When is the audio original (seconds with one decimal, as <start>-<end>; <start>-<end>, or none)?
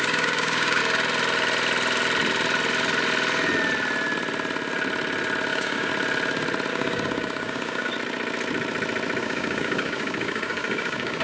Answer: 0.8-5.5; 5.9-6.7; 7.9-9.2